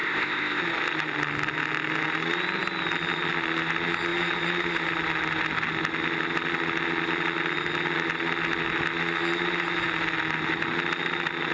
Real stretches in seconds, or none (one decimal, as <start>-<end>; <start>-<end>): 0.6-11.5